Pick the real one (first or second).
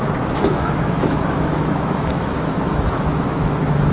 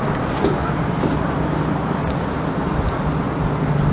second